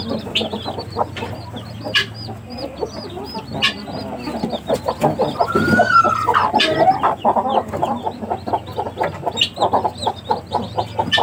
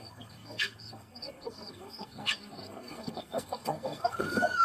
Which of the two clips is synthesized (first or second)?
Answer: second